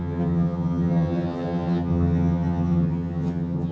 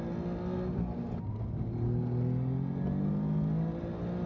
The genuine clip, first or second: second